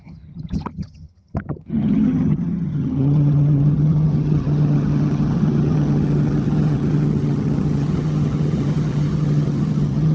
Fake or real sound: fake